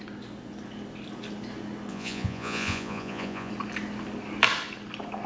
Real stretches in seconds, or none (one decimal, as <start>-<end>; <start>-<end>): 0.0-1.9; 3.5-5.3